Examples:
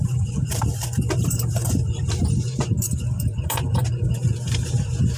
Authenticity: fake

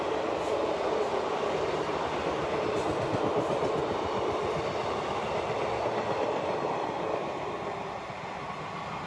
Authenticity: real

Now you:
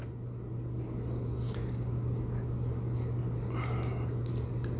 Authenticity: real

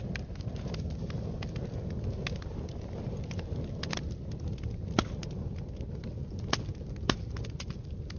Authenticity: real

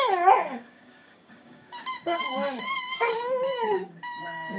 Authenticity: fake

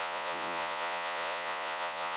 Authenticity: fake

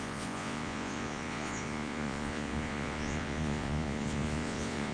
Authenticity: fake